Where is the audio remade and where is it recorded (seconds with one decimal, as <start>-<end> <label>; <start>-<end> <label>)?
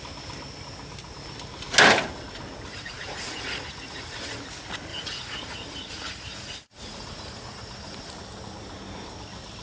0.0-2.7 recorded; 2.7-4.4 remade; 4.4-4.9 recorded; 4.9-8.1 remade; 8.1-9.6 recorded